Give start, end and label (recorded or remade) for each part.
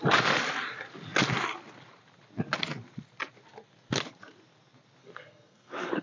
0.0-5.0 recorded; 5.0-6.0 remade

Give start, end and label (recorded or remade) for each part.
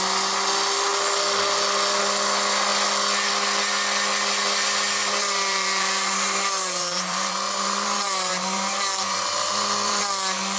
0.0-5.0 recorded; 5.0-10.0 remade; 10.0-10.6 recorded